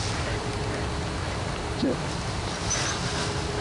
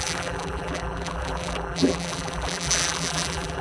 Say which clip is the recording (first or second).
first